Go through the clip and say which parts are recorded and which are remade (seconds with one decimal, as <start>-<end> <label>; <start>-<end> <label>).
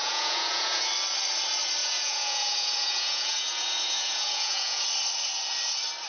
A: 0.0-0.9 remade; 0.9-1.8 recorded; 1.8-4.8 remade; 4.8-6.1 recorded